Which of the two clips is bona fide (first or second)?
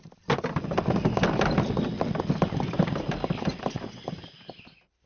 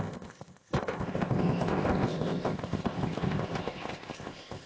first